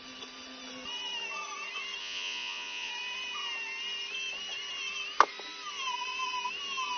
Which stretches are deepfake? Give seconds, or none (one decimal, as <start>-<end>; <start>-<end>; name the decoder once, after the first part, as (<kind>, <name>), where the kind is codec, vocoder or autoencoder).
2.0-2.9 (vocoder, Vocos)